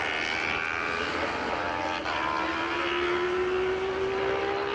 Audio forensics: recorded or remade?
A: recorded